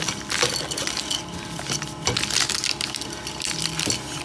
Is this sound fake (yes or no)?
no